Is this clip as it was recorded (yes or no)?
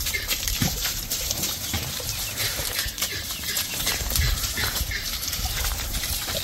no